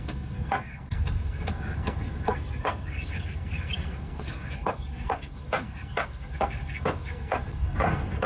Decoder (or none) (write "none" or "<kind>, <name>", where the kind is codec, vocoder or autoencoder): codec, SNAC